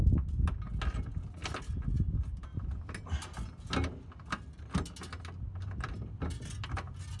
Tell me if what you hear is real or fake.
real